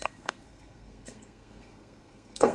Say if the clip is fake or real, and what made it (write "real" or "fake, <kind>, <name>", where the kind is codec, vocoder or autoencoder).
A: fake, codec, SNAC